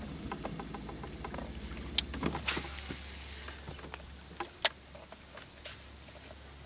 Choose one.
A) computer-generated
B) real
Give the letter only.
B